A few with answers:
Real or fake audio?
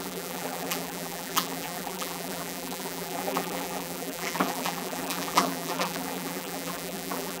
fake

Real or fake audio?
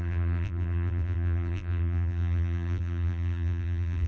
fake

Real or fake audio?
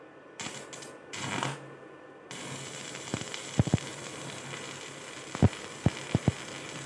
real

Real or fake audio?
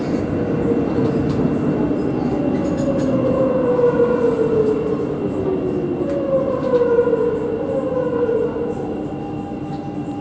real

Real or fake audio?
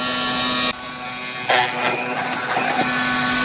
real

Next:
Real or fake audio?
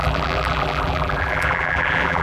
fake